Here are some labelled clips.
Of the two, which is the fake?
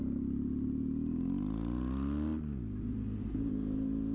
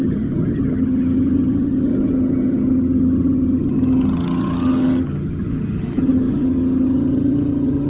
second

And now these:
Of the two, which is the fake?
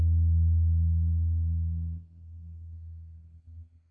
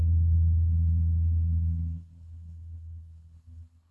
second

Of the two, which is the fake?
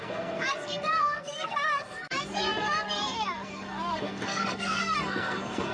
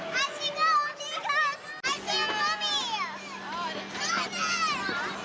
first